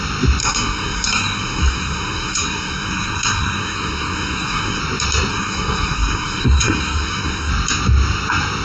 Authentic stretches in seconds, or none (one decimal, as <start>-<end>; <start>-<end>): 0.0-0.4; 4.8-5.3; 7.5-8.6